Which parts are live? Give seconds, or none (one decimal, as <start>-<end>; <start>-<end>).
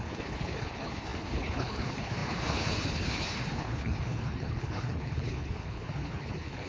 none